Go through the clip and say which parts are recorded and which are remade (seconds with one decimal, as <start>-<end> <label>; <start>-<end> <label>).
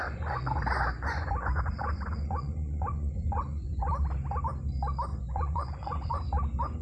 0.0-3.9 remade; 3.9-5.1 recorded; 5.1-6.2 remade; 6.2-6.8 recorded